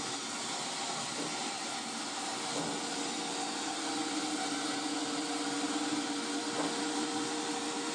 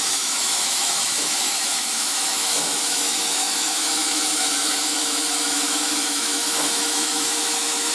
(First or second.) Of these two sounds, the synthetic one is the second